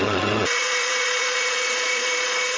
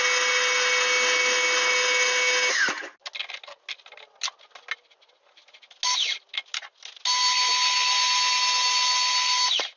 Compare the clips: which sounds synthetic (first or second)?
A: first